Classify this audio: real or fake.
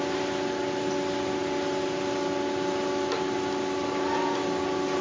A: real